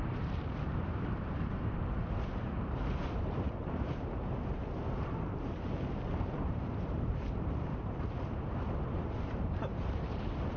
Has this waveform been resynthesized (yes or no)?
yes